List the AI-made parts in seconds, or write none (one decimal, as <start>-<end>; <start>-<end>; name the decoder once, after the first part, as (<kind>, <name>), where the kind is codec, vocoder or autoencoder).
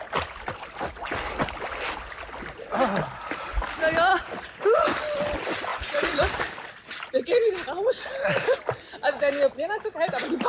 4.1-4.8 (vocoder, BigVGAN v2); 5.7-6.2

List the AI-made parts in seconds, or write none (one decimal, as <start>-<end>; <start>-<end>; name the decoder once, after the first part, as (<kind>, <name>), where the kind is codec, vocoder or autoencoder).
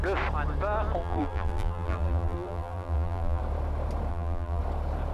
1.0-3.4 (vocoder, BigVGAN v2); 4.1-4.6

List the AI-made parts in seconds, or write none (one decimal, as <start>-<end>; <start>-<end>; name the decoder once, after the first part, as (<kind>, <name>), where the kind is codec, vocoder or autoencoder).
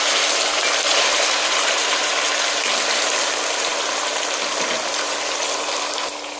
0.9-2.1 (vocoder, BigVGAN v2)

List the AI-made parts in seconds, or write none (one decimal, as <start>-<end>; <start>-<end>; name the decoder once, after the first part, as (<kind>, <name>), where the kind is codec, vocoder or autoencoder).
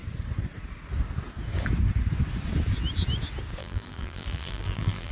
3.6-5.1 (vocoder, BigVGAN v2)